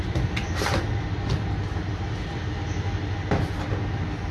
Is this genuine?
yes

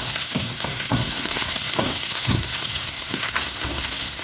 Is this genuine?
no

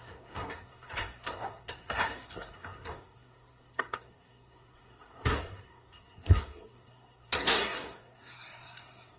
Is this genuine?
no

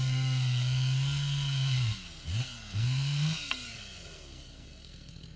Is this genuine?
no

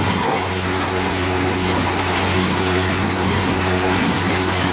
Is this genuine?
no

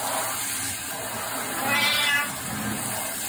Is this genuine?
yes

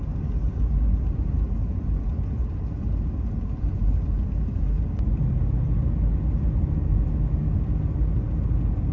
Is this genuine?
yes